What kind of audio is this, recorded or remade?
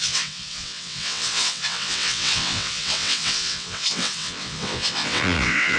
remade